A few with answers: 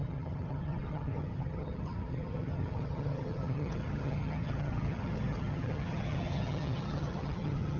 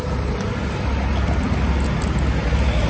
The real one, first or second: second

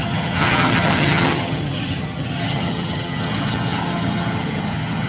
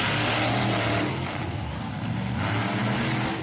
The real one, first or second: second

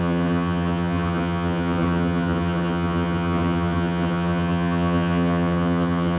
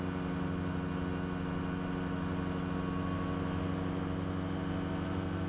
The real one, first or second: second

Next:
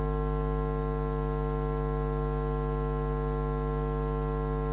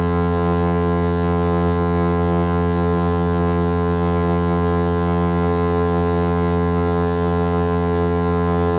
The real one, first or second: first